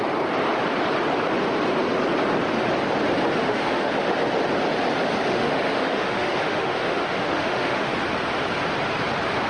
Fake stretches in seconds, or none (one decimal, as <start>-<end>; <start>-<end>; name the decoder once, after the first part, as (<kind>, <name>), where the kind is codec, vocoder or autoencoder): 3.4-3.9 (autoencoder, DAC-VAE); 5.3-7.9